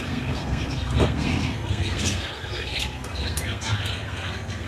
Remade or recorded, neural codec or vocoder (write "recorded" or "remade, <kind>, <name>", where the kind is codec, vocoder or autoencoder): remade, codec, SNAC